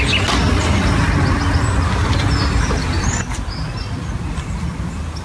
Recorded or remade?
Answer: recorded